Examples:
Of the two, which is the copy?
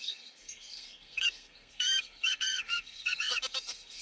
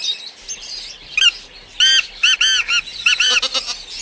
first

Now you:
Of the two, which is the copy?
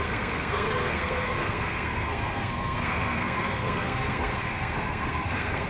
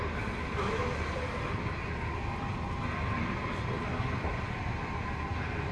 first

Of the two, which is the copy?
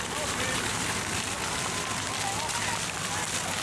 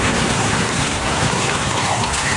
second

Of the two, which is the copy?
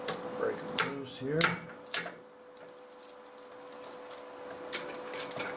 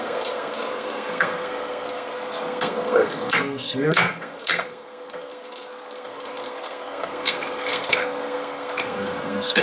second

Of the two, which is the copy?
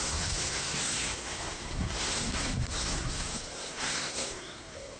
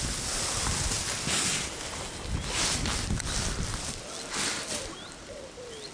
first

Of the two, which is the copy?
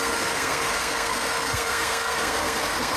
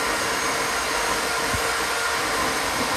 first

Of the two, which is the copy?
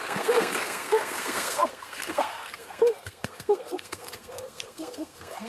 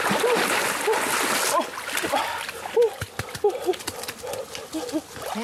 first